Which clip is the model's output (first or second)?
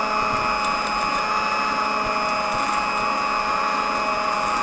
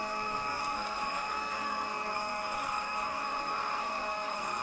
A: second